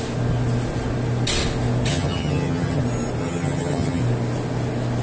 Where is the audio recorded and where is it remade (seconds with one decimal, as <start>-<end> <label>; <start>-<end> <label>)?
0.0-1.9 recorded; 1.9-2.8 remade; 2.8-3.2 recorded; 3.2-4.0 remade; 4.0-5.0 recorded